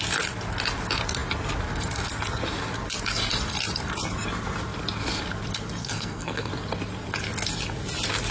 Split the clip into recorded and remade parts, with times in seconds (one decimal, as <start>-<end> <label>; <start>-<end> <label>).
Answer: 0.0-5.8 recorded; 5.8-6.5 remade; 6.5-8.3 recorded